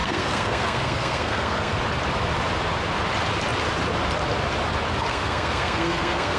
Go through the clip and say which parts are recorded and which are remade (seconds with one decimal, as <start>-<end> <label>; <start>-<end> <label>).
0.0-1.8 remade; 1.8-5.1 recorded; 5.1-6.4 remade

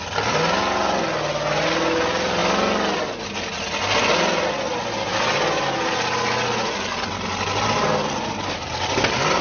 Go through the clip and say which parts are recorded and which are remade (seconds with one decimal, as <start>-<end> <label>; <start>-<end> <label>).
0.0-9.4 recorded

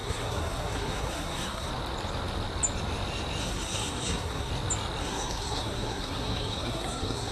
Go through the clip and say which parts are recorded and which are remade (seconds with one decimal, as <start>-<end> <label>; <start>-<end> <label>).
0.0-1.7 remade; 1.7-3.4 recorded; 3.4-4.5 remade; 4.5-5.0 recorded; 5.0-7.3 remade

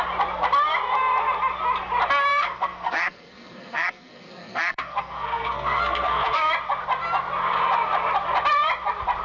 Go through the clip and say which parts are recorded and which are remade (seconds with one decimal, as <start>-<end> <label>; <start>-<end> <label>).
0.0-2.3 recorded; 2.3-6.5 remade; 6.5-9.2 recorded

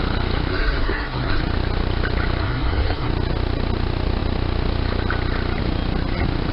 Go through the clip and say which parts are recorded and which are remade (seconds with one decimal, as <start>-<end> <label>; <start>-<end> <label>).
0.0-0.5 recorded; 0.5-1.4 remade; 1.4-2.4 recorded; 2.4-3.1 remade; 3.1-6.5 recorded

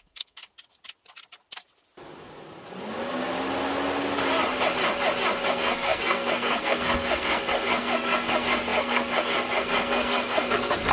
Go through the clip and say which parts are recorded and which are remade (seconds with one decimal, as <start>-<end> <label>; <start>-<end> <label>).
0.0-0.4 remade; 0.4-5.5 recorded; 5.5-10.9 remade